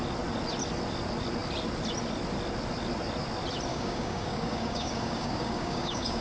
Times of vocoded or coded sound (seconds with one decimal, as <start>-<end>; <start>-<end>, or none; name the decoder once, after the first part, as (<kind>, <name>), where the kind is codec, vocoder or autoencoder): 3.7-6.2 (codec, DAC)